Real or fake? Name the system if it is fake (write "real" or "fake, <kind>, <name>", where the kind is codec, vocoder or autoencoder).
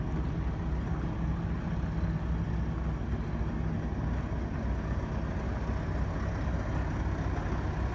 real